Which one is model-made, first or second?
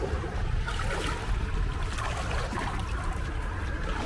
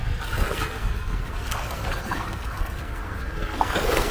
second